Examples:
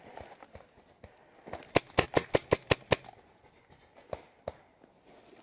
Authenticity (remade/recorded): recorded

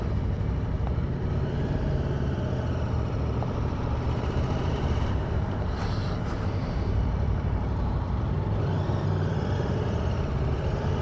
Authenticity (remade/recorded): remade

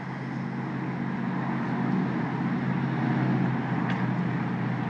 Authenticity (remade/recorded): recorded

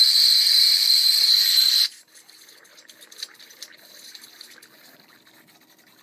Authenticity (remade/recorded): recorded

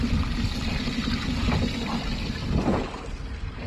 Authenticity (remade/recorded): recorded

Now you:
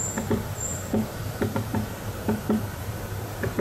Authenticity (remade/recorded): remade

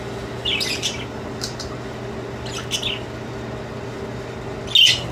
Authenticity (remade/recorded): recorded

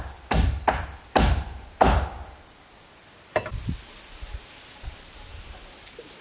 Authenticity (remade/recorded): recorded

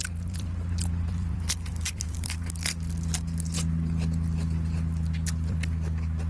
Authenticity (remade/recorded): recorded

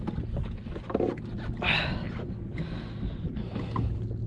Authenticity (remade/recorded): recorded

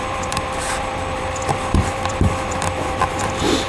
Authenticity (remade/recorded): remade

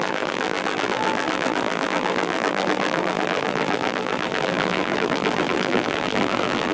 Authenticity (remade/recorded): remade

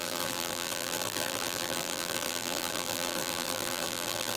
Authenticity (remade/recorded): remade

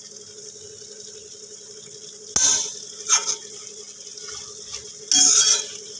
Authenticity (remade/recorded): recorded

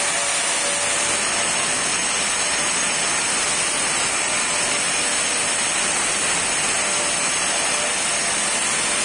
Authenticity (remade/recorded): recorded